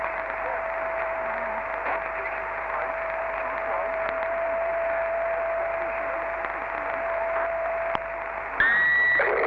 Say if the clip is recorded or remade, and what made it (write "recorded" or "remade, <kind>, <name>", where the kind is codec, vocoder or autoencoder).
recorded